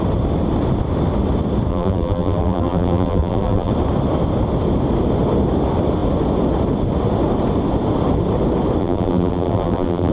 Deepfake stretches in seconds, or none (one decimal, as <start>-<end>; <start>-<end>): 1.7-3.7; 8.8-10.1